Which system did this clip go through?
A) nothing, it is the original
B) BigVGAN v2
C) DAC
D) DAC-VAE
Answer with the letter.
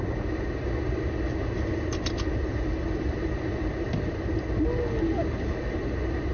A